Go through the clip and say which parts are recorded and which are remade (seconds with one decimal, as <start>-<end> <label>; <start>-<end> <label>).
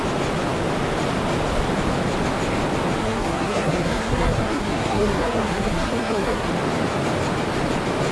0.0-3.0 recorded; 3.0-6.5 remade; 6.5-8.1 recorded